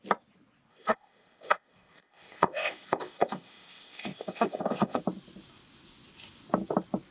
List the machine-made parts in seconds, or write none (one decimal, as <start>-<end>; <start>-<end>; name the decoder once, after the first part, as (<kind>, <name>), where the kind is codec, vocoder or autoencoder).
0.7-5.0 (codec, ZipCodec)